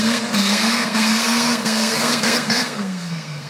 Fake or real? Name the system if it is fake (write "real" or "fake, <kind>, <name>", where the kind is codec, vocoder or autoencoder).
fake, codec, SNAC